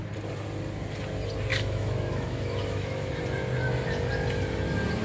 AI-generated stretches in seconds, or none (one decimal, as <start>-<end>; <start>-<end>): 1.5-3.1

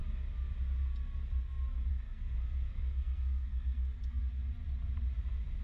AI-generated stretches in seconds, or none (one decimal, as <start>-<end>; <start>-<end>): 1.9-4.2

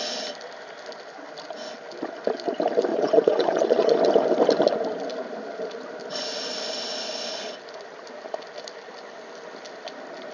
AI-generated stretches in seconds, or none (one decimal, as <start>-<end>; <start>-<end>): 2.9-4.0